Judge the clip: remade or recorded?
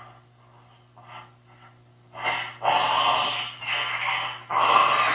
recorded